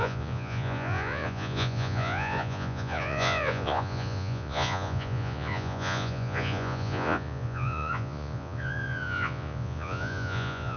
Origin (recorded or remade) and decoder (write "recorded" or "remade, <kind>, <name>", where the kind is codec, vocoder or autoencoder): remade, vocoder, Vocos